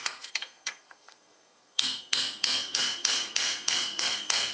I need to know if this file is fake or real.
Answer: fake